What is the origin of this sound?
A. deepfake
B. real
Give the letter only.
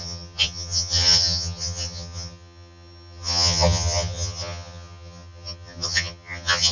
A